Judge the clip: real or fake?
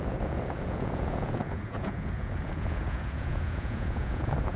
fake